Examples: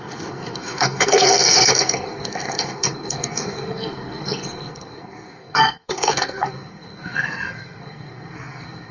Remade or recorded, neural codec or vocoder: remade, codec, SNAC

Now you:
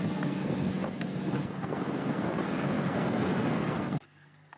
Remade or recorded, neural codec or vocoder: remade, codec, SNAC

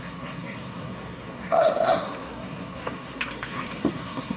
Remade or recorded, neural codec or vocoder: remade, codec, SNAC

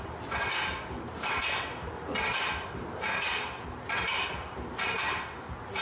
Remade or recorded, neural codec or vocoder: recorded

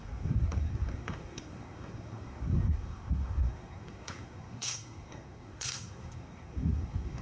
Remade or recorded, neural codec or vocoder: remade, codec, SNAC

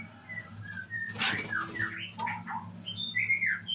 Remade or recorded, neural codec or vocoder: recorded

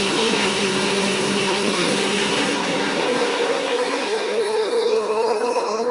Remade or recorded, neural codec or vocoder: remade, codec, SNAC